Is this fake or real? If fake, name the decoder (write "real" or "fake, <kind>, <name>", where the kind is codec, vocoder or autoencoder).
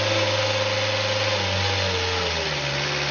real